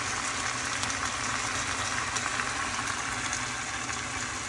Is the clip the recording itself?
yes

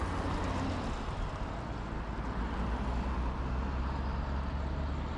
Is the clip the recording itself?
yes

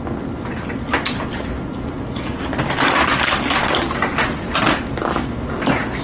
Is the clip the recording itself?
yes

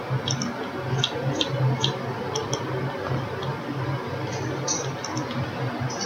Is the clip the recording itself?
yes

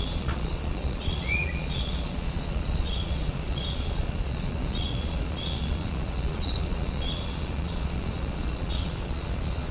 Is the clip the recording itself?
no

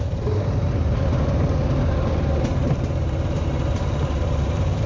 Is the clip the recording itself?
yes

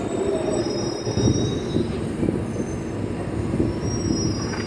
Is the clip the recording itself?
yes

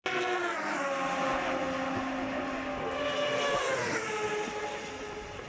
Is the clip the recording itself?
yes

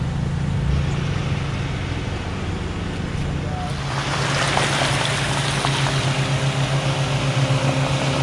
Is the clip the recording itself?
yes